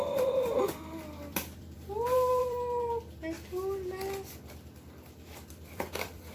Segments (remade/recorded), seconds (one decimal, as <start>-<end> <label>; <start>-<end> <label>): 0.0-3.2 remade; 3.2-5.5 recorded; 5.5-6.3 remade